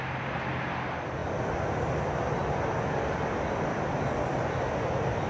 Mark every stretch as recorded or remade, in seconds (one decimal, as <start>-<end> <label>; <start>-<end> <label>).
0.0-5.3 recorded